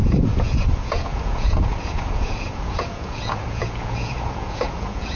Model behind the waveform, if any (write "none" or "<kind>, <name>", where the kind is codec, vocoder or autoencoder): vocoder, Vocos